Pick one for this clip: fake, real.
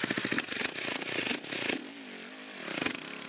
real